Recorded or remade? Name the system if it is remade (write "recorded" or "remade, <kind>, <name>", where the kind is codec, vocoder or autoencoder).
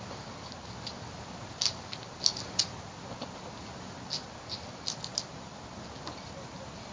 recorded